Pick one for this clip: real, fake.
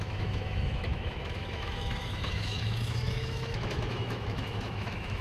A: fake